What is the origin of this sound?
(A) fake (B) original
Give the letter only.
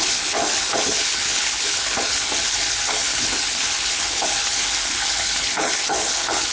A